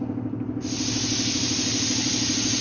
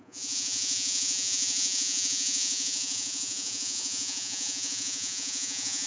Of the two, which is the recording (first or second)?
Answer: first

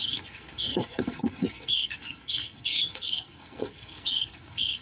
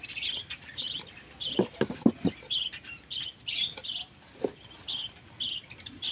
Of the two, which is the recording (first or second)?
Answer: second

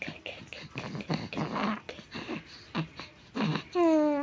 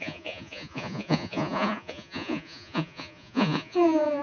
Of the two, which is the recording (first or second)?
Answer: first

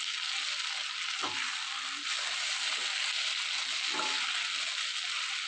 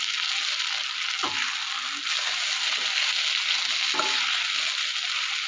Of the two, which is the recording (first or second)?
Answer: second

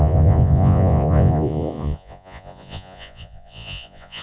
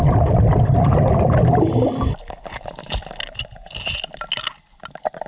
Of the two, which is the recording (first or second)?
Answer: second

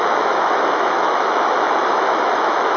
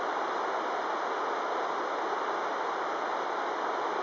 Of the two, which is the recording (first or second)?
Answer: second